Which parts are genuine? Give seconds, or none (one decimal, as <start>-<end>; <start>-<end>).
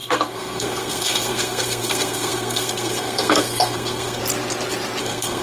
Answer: 4.2-5.0